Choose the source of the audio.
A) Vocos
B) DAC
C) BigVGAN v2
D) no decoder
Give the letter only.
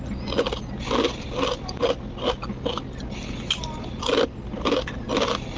D